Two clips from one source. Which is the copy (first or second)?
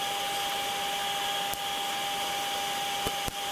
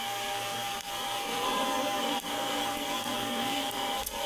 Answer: second